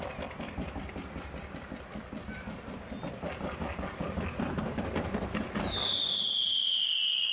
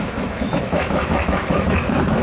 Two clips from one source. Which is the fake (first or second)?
second